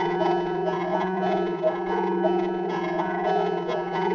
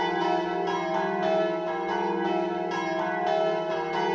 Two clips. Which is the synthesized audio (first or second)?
first